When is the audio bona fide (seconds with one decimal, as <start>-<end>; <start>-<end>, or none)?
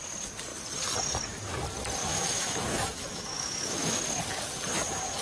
0.0-2.0; 4.0-5.2